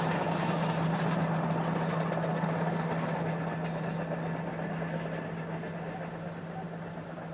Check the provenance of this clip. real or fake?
real